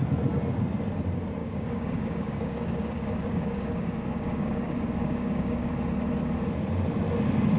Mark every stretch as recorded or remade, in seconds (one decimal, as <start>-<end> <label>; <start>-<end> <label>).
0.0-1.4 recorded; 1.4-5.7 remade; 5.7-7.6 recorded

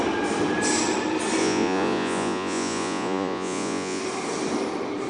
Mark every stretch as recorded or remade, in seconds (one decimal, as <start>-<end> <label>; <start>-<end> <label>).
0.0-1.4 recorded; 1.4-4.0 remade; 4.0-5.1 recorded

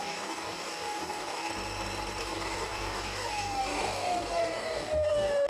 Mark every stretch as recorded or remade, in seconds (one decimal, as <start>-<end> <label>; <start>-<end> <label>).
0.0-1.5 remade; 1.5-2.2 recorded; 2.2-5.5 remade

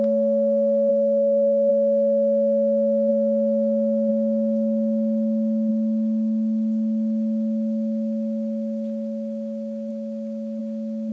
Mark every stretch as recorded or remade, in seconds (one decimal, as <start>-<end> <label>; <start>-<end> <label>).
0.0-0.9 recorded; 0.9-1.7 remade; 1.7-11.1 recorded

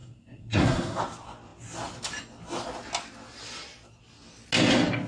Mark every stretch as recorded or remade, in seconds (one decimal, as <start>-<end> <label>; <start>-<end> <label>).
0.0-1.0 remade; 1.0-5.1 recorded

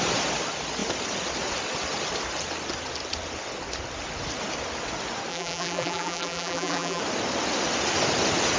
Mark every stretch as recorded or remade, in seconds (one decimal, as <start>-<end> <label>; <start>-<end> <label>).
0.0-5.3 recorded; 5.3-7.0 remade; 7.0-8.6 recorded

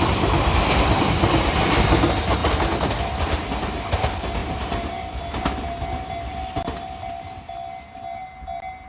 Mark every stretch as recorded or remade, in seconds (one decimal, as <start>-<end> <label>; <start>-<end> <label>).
0.0-8.9 recorded

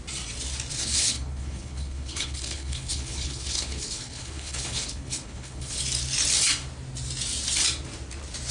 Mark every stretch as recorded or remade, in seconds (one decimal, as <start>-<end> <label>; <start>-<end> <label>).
0.0-0.7 recorded; 0.7-5.8 remade; 5.8-8.5 recorded